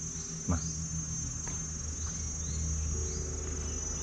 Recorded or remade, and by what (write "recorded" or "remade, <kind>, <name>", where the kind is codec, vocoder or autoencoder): recorded